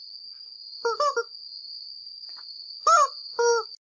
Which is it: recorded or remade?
recorded